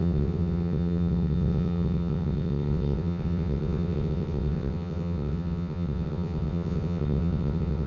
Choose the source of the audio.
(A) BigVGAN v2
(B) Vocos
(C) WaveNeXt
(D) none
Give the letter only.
C